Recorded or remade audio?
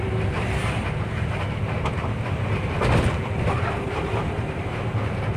remade